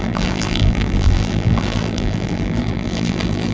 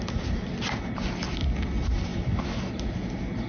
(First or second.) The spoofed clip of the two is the first